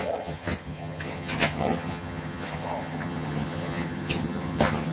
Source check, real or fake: fake